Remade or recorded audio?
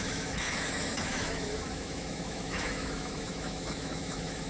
remade